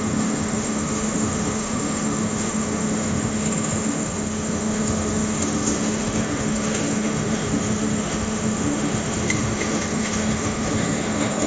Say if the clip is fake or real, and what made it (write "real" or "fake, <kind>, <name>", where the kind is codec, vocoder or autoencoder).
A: fake, autoencoder, DAC-VAE